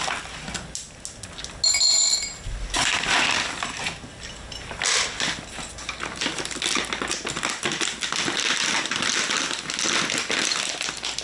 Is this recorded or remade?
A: recorded